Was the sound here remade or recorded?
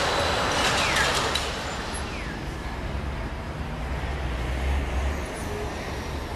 recorded